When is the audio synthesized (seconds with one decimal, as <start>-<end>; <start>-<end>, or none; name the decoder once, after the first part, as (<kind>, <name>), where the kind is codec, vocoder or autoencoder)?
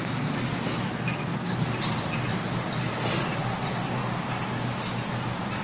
none